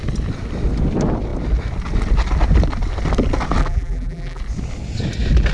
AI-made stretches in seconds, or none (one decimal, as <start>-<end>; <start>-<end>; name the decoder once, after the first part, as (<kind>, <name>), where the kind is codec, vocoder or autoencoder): 3.6-4.4 (vocoder, BigVGAN v2)